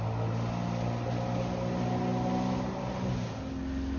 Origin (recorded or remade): recorded